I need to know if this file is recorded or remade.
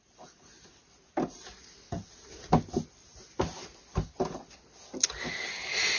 recorded